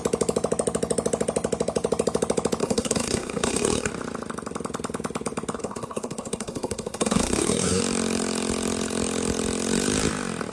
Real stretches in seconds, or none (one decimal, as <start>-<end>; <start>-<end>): 0.0-2.6; 3.9-5.6; 7.8-10.5